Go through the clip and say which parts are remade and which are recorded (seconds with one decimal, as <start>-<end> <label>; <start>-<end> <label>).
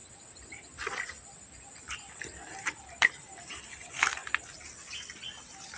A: 0.0-4.2 remade; 4.2-5.8 recorded